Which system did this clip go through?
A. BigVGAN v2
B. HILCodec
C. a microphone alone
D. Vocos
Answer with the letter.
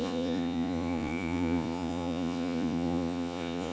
D